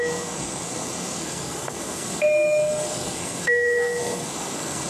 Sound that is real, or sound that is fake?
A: fake